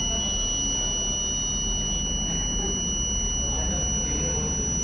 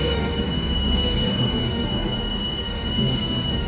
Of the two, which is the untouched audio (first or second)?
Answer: first